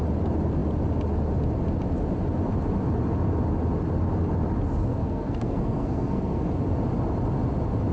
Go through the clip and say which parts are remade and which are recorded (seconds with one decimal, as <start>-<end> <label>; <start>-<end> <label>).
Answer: 0.0-4.9 recorded; 4.9-6.5 remade; 6.5-7.9 recorded